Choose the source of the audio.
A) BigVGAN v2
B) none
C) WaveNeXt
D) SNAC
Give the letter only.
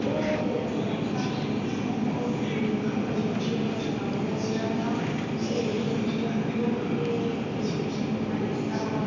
B